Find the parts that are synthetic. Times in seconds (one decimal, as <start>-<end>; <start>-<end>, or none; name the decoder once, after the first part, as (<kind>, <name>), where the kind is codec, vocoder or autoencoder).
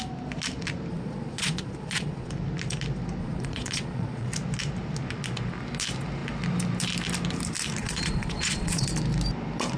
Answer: 0.9-2.3 (vocoder, Vocos); 3.2-4.3; 7.8-8.9